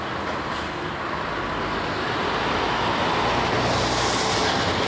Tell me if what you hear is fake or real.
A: real